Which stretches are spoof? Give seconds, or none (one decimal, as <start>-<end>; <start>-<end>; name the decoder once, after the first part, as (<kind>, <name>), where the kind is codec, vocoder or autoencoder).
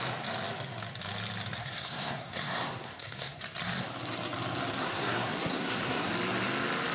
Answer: 1.6-3.4 (codec, SNAC); 4.8-6.1